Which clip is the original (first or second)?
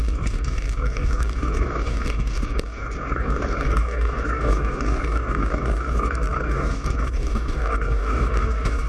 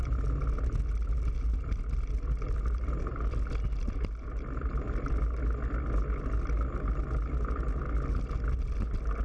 second